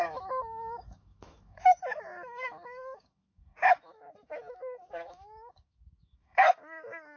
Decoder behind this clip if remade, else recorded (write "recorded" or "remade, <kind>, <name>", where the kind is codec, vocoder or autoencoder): remade, autoencoder, DAC-VAE